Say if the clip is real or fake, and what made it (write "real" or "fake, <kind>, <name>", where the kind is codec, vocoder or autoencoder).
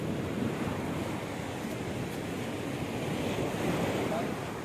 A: real